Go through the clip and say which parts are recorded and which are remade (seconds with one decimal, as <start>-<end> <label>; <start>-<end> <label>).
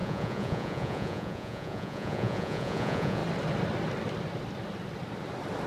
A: 0.0-3.2 remade; 3.2-5.7 recorded